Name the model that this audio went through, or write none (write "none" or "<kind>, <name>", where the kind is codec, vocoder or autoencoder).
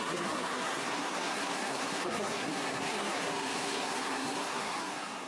codec, SNAC